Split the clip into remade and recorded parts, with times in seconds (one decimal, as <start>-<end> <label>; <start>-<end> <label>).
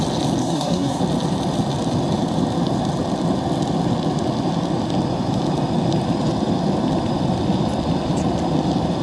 0.0-0.4 recorded; 0.4-1.0 remade; 1.0-9.0 recorded